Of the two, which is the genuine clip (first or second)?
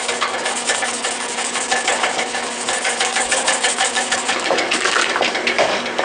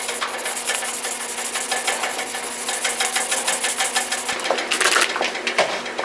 second